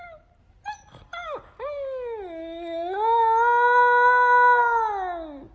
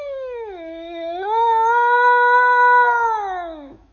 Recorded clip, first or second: first